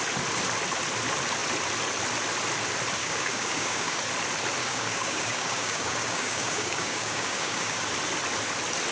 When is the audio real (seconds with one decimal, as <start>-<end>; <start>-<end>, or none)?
0.0-3.0; 4.0-4.6; 7.8-8.9